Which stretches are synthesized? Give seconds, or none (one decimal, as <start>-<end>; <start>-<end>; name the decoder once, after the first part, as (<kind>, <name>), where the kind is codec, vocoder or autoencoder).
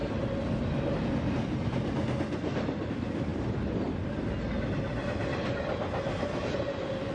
none